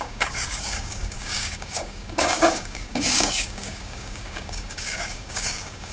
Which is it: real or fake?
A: fake